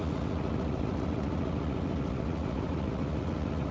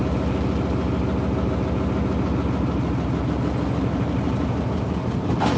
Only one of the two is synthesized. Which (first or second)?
first